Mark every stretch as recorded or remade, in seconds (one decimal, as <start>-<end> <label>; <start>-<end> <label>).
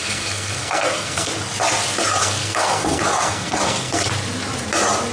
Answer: 0.0-1.3 remade; 1.3-2.2 recorded; 2.2-4.1 remade; 4.1-5.1 recorded